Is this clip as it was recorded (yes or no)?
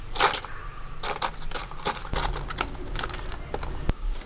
yes